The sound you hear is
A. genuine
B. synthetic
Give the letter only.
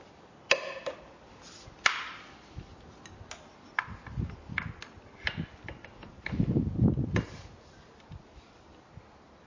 A